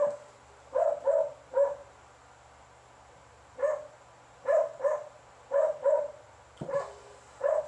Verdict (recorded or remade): recorded